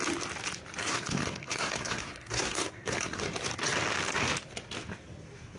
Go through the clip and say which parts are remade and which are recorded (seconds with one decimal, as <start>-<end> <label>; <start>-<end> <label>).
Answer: 0.0-0.8 recorded; 0.8-3.2 remade; 3.2-5.6 recorded